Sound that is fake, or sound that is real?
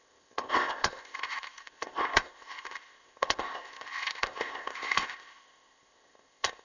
fake